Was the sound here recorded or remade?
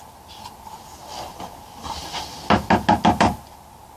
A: recorded